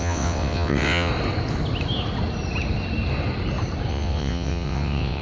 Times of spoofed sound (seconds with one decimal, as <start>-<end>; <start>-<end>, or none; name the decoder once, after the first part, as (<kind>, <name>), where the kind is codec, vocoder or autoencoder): 0.0-1.1 (vocoder, WaveNeXt); 3.9-5.2